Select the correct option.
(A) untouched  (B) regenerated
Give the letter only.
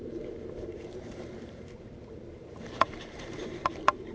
B